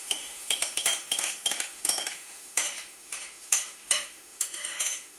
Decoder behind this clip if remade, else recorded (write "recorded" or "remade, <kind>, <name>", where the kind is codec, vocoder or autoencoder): remade, autoencoder, DAC-VAE